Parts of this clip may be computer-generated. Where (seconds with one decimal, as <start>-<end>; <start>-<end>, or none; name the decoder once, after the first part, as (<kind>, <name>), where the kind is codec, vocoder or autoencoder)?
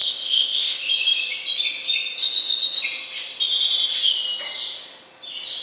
0.0-0.9 (codec, ZipCodec)